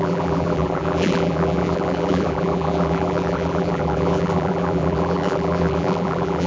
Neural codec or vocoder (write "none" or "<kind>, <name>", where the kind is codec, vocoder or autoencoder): vocoder, BigVGAN v2